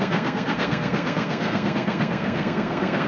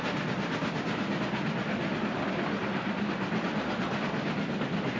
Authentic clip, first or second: second